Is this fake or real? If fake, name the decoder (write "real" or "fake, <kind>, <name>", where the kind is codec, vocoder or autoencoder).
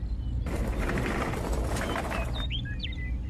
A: fake, vocoder, BigVGAN v2